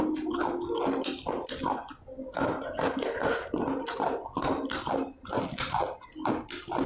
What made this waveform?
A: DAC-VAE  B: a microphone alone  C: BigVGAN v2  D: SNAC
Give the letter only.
B